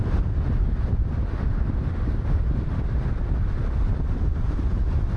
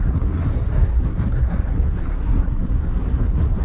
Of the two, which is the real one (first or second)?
first